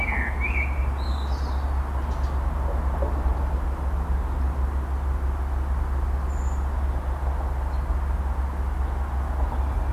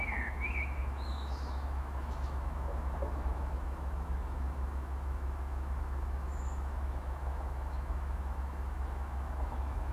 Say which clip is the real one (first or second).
first